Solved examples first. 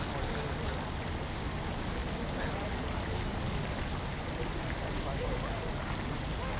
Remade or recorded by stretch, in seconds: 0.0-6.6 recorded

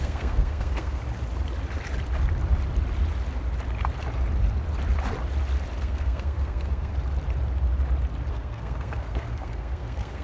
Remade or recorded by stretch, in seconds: 0.0-1.0 remade; 1.0-5.8 recorded; 5.8-6.9 remade; 6.9-8.3 recorded; 8.3-10.2 remade

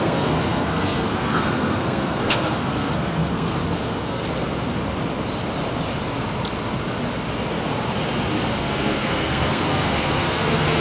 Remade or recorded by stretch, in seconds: 0.0-4.2 remade; 4.2-8.5 recorded; 8.5-10.8 remade

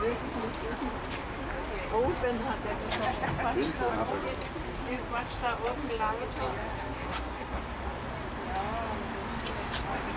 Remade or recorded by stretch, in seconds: 0.0-6.7 recorded; 6.7-7.6 remade; 7.6-10.2 recorded

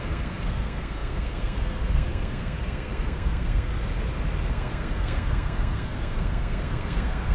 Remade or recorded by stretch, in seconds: 0.0-3.7 remade; 3.7-4.5 recorded; 4.5-7.3 remade

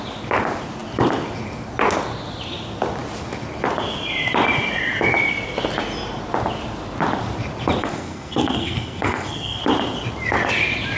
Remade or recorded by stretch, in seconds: 0.0-7.8 recorded; 7.8-9.6 remade; 9.6-11.0 recorded

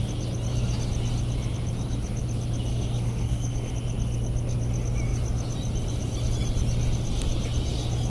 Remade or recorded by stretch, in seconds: 0.0-2.7 recorded; 2.7-3.7 remade; 3.7-8.1 recorded

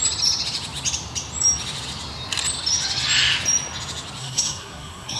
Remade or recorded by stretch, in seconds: 0.0-4.2 recorded; 4.2-5.2 remade